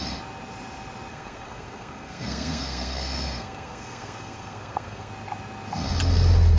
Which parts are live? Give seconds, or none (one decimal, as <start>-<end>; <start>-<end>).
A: 0.0-1.1; 5.1-6.6